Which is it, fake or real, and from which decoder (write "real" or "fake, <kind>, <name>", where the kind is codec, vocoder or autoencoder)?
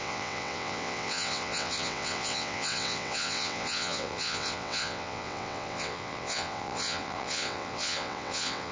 fake, vocoder, WaveNeXt